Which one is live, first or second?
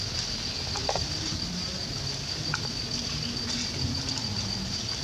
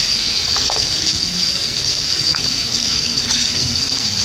first